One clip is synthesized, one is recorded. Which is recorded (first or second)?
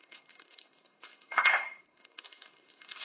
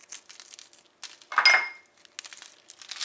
second